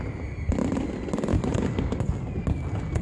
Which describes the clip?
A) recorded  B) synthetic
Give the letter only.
A